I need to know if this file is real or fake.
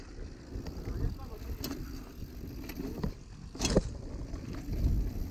real